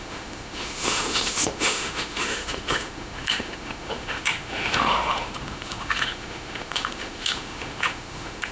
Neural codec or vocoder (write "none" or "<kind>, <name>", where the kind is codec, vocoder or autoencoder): autoencoder, DAC-VAE